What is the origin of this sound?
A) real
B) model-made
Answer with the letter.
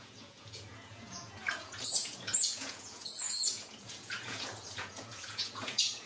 B